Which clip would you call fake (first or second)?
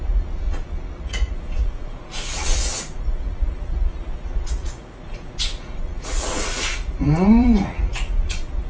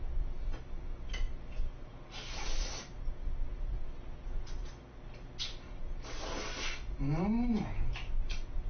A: first